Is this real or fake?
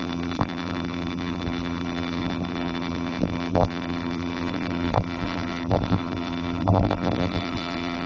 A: fake